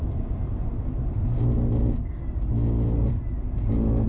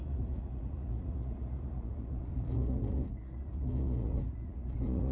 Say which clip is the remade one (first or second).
second